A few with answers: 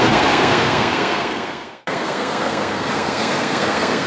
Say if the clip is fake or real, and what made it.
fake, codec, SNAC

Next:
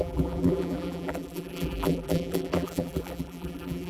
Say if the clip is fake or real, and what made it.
fake, vocoder, BigVGAN v2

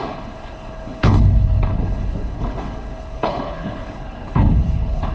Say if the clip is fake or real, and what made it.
fake, codec, HILCodec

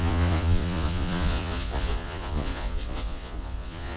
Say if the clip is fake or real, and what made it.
fake, vocoder, Vocos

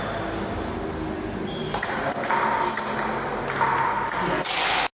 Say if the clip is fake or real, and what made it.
real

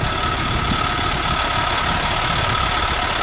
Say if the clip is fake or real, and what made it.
real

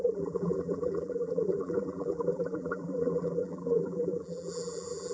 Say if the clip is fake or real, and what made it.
fake, vocoder, BigVGAN v2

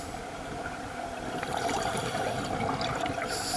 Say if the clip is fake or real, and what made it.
real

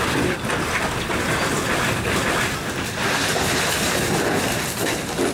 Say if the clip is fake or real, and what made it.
real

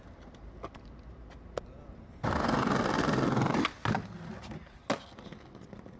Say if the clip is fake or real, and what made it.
real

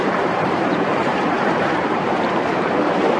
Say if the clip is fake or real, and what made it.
fake, vocoder, BigVGAN v2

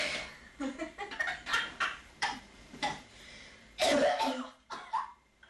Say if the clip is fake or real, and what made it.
fake, vocoder, BigVGAN v2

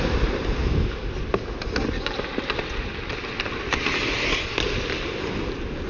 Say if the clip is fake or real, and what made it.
real